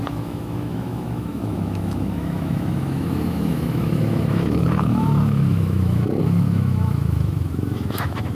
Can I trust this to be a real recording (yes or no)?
no